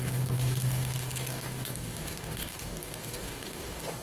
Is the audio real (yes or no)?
no